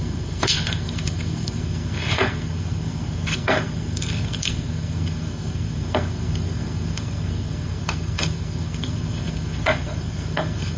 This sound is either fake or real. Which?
fake